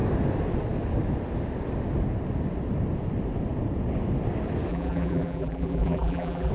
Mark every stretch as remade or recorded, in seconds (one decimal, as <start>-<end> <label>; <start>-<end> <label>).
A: 0.0-4.7 recorded; 4.7-6.5 remade

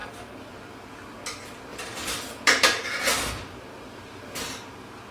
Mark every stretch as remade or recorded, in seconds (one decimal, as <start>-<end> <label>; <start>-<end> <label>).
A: 0.0-1.7 recorded; 1.7-3.0 remade; 3.0-5.1 recorded

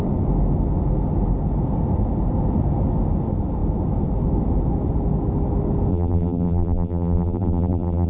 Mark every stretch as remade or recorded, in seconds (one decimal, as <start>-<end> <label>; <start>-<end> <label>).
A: 0.0-5.9 recorded; 5.9-8.1 remade

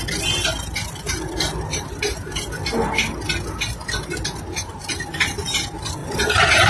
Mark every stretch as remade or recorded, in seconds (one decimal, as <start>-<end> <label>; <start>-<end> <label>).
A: 0.0-1.7 recorded; 1.7-2.5 remade; 2.5-6.0 recorded; 6.0-6.7 remade

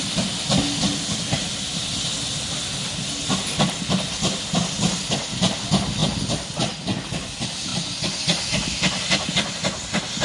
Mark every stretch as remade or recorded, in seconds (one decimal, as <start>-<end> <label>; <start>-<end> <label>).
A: 0.0-10.2 recorded

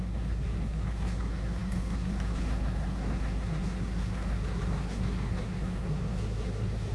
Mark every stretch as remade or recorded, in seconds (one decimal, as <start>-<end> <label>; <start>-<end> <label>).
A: 0.0-6.9 remade